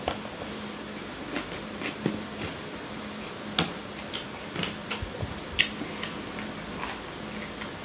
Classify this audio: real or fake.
real